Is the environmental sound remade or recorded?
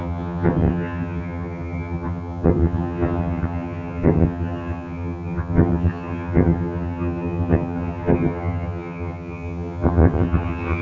remade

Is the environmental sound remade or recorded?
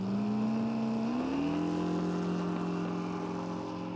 recorded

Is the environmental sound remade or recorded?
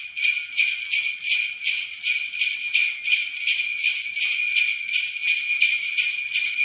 recorded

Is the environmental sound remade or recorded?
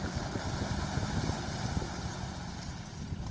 recorded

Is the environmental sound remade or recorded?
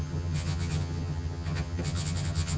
remade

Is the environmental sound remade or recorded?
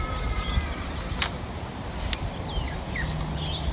recorded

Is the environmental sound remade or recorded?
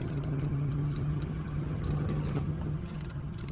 remade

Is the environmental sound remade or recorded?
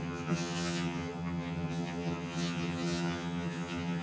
remade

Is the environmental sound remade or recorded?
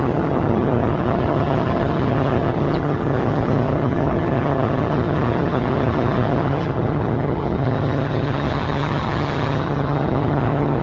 remade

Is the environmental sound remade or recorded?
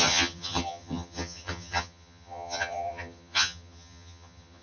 remade